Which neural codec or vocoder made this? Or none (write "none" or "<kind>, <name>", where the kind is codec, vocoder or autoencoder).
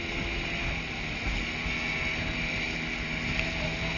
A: none